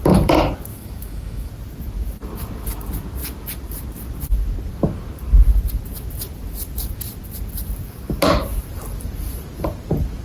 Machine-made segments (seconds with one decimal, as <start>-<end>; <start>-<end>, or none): 0.7-1.5